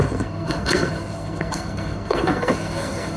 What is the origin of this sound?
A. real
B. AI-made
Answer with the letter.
B